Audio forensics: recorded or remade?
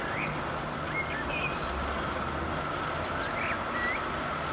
recorded